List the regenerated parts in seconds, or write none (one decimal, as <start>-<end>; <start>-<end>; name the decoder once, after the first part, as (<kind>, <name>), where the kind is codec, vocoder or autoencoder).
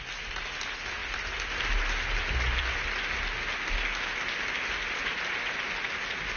none